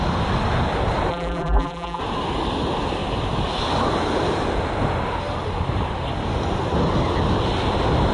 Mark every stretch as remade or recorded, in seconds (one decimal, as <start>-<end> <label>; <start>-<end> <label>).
0.0-1.1 recorded; 1.1-2.0 remade; 2.0-8.1 recorded